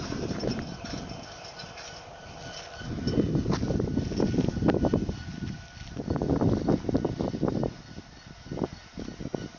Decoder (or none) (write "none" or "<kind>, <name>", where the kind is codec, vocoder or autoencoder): none